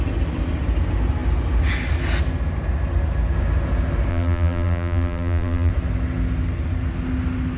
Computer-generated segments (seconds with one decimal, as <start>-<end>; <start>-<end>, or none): 4.1-5.7